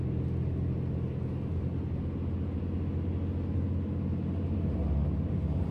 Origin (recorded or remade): recorded